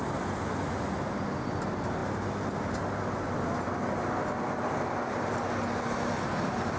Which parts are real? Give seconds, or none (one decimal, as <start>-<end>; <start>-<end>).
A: 0.0-6.8